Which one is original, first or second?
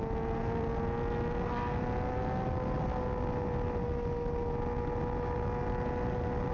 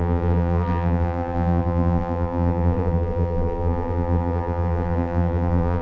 first